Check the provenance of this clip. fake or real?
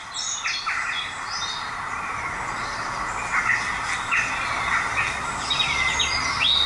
real